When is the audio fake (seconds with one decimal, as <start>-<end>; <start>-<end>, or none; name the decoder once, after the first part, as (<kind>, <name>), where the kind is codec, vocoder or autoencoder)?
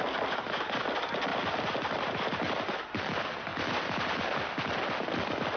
none